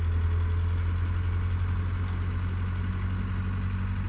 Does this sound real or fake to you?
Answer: real